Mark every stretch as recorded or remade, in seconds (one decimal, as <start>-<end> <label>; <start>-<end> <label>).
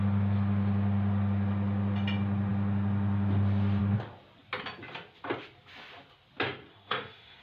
0.0-6.7 recorded; 6.7-7.4 remade